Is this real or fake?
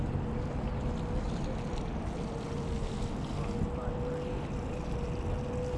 real